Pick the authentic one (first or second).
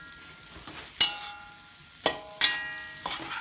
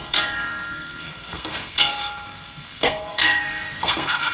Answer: first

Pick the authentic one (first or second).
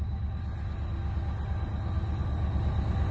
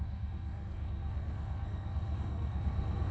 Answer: first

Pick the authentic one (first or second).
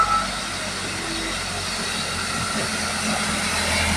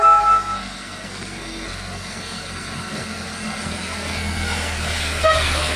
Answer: first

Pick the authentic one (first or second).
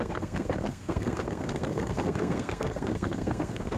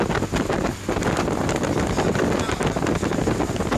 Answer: second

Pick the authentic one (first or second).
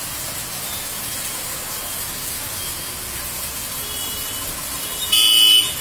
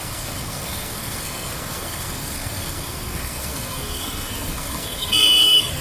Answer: first